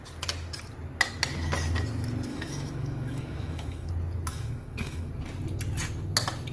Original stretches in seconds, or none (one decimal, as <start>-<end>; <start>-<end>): 0.0-2.3; 3.9-4.3; 5.1-6.5

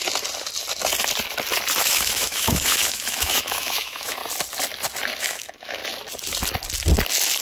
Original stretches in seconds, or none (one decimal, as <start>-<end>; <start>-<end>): 0.0-1.8; 4.2-5.2; 5.8-7.4

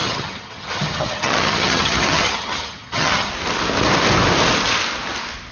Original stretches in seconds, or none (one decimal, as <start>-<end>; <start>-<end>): 3.3-5.5